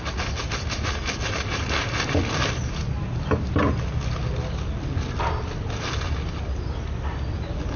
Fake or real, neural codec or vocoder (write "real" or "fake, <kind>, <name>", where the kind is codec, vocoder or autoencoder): real